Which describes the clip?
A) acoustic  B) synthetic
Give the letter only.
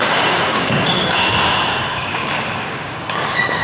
B